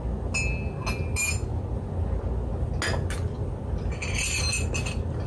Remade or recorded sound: recorded